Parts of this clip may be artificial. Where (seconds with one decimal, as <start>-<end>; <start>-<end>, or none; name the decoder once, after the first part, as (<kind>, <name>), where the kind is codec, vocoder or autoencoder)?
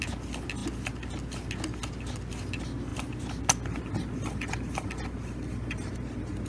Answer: none